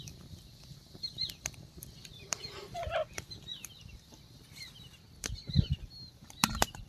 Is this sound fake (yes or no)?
yes